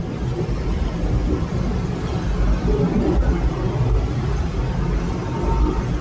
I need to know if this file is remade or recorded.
recorded